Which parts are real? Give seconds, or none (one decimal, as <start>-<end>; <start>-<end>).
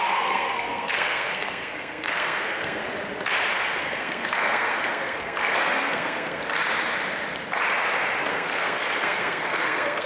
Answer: 2.8-3.8; 6.4-8.3